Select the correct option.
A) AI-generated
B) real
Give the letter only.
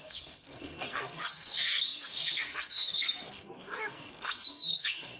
A